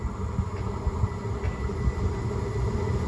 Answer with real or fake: real